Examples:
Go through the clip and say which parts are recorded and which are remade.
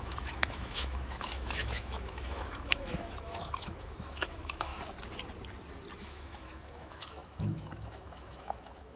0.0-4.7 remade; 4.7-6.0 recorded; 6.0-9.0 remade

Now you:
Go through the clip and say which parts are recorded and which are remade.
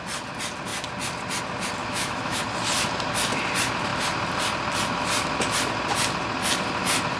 0.0-1.8 recorded; 1.8-2.4 remade; 2.4-7.2 recorded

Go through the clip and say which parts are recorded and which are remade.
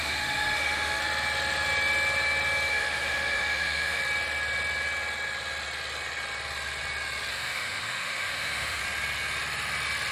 0.0-1.0 remade; 1.0-2.7 recorded; 2.7-4.0 remade; 4.0-7.3 recorded; 7.3-8.8 remade; 8.8-10.1 recorded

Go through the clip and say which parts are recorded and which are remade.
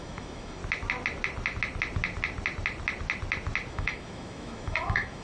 0.0-0.6 remade; 0.6-3.7 recorded; 3.7-5.2 remade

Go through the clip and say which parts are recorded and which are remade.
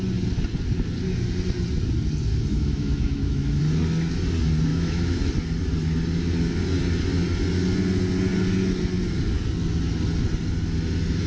0.0-2.3 recorded; 2.3-3.6 remade; 3.6-4.7 recorded; 4.7-5.3 remade; 5.3-11.3 recorded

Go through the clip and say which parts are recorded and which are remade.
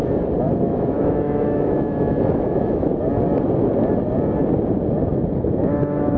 0.0-0.6 recorded; 0.6-2.9 remade; 2.9-5.1 recorded; 5.1-6.2 remade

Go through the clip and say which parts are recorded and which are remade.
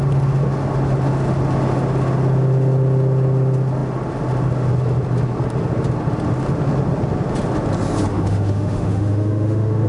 0.0-8.1 recorded; 8.1-9.9 remade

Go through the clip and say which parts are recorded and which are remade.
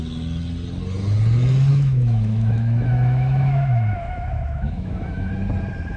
0.0-1.7 recorded; 1.7-5.3 remade; 5.3-6.0 recorded